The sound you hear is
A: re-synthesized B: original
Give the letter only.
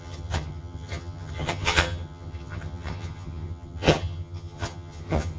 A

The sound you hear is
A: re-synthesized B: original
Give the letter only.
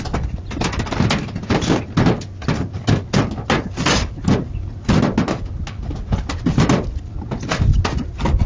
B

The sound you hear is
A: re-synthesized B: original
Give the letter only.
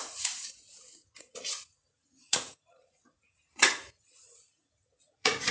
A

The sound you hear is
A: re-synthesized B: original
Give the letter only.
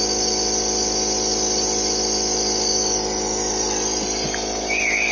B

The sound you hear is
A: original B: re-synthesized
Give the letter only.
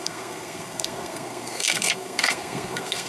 B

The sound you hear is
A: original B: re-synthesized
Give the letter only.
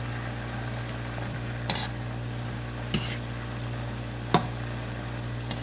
A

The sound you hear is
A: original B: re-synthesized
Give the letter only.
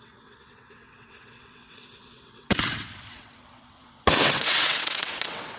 B